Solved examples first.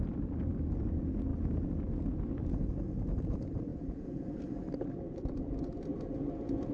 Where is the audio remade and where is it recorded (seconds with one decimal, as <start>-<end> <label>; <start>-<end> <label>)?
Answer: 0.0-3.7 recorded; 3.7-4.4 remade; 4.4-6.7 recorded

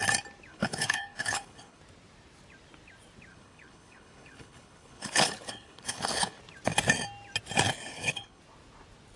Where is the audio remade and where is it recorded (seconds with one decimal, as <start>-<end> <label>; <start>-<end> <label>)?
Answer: 0.0-0.5 recorded; 0.5-1.8 remade; 1.8-3.3 recorded; 3.3-6.4 remade; 6.4-7.9 recorded; 7.9-8.4 remade; 8.4-9.2 recorded

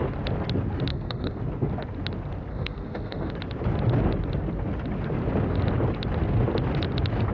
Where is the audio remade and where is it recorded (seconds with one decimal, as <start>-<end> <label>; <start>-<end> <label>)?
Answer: 0.0-0.9 recorded; 0.9-1.4 remade; 1.4-2.5 recorded; 2.5-3.3 remade; 3.3-7.3 recorded